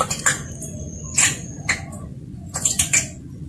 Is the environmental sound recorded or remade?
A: remade